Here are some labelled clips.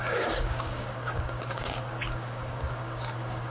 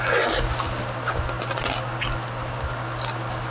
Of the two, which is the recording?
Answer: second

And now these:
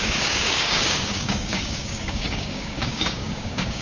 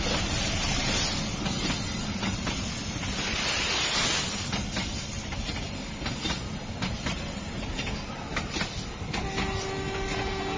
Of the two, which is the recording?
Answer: second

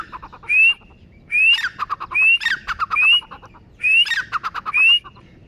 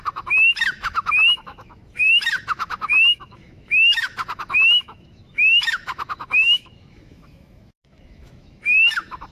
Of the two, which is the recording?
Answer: first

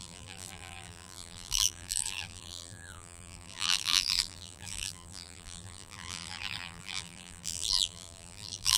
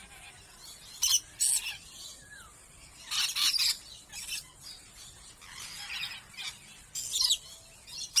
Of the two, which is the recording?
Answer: second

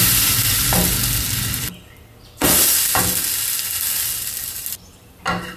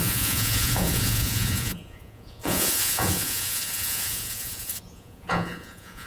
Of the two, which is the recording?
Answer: first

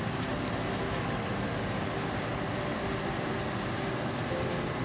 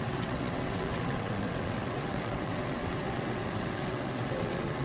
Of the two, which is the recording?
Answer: first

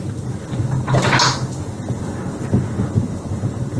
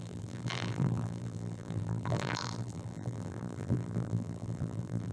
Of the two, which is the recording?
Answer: first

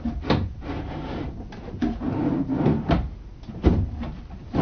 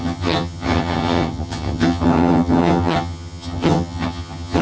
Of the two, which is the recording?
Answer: first